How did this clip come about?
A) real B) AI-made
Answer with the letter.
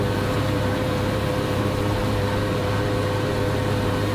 B